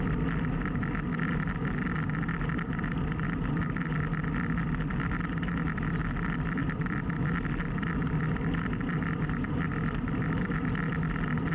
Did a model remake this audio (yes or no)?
no